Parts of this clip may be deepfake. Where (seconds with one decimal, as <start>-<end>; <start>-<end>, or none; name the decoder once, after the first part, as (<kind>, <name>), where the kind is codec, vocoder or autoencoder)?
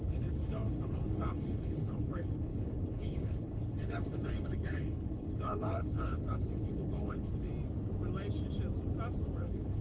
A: 0.0-7.5 (codec, HILCodec); 9.4-9.8